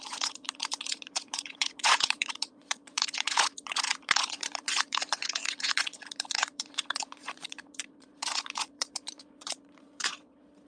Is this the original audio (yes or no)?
no